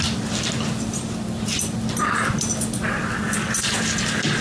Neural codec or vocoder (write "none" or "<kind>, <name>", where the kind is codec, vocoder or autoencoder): none